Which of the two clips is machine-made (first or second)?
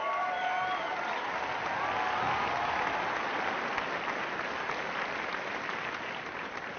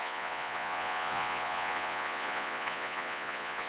second